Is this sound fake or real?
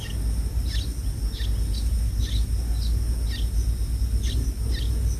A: real